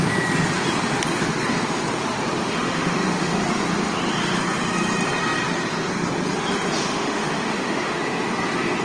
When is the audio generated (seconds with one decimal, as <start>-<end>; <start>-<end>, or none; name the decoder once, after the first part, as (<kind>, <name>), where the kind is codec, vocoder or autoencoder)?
2.4-3.4 (autoencoder, DAC-VAE); 6.8-8.0